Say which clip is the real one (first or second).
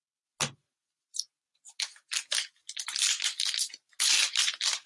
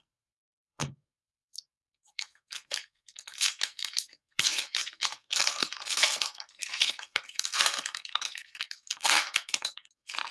first